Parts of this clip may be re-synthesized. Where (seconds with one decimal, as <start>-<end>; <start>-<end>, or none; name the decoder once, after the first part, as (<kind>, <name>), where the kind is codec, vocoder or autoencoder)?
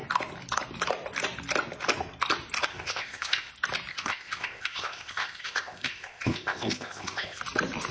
2.7-3.5 (codec, ZipCodec); 3.9-7.4